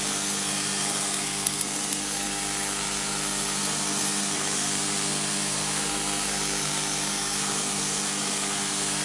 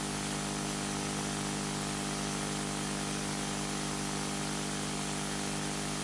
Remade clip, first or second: first